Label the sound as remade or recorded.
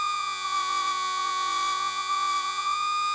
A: remade